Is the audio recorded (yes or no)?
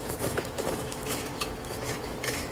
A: no